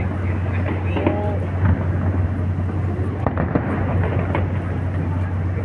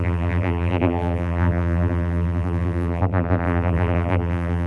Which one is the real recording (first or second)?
first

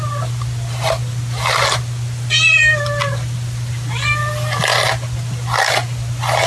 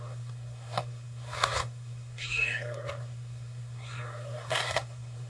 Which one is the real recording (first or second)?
first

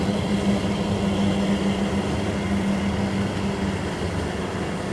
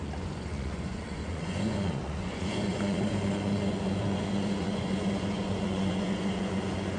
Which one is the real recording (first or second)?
first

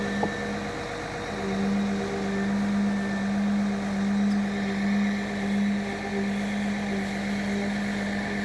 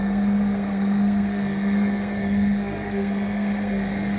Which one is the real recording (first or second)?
first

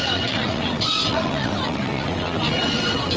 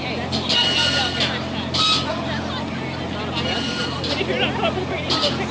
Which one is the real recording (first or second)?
second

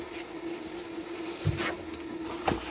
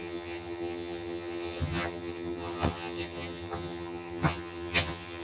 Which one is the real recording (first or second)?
first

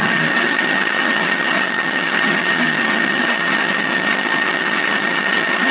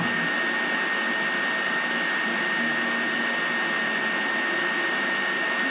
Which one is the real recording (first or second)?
second